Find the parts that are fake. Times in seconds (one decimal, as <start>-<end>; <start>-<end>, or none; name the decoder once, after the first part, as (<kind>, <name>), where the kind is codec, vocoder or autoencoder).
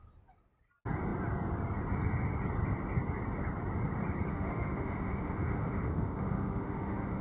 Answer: 4.3-7.2 (autoencoder, DAC-VAE)